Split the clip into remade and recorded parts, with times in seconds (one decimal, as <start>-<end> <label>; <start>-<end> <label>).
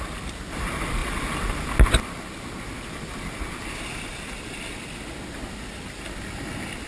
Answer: 0.0-6.9 recorded